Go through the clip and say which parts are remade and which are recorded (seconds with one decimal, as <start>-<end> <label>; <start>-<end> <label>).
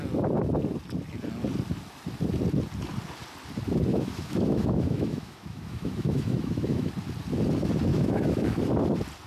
0.0-3.9 recorded; 3.9-6.9 remade; 6.9-7.9 recorded; 7.9-8.6 remade; 8.6-9.3 recorded